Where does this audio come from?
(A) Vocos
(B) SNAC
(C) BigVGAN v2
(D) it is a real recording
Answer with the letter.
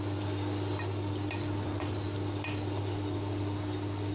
D